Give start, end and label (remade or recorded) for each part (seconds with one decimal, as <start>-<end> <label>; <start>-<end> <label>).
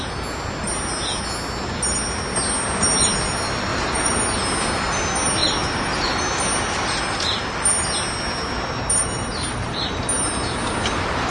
0.0-3.7 recorded; 3.7-4.2 remade; 4.2-5.4 recorded; 5.4-6.2 remade; 6.2-9.0 recorded; 9.0-10.0 remade; 10.0-11.3 recorded